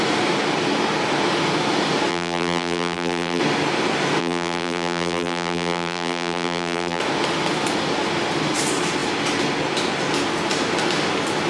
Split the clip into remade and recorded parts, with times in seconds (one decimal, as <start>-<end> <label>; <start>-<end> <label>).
0.0-2.1 recorded; 2.1-3.4 remade; 3.4-4.2 recorded; 4.2-7.0 remade; 7.0-11.5 recorded

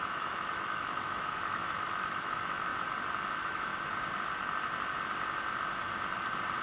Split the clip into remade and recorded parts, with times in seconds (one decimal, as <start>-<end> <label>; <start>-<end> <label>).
0.0-2.7 remade; 2.7-3.3 recorded; 3.3-3.7 remade; 3.7-6.6 recorded